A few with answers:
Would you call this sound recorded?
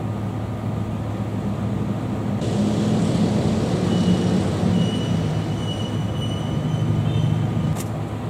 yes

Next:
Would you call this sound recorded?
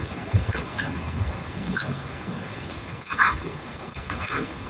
no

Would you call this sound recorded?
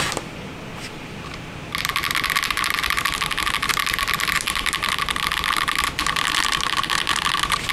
yes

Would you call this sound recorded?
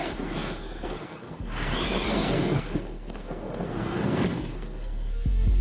no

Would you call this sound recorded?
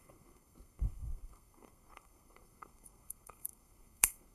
no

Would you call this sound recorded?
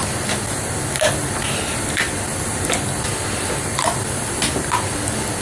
yes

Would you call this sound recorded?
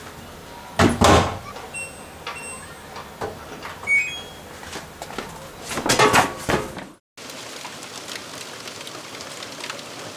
yes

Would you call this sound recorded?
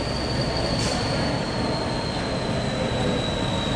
yes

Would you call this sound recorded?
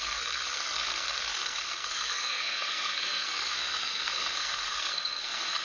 no